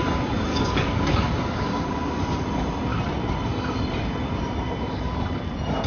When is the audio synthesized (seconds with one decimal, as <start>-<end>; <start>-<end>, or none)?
0.5-1.7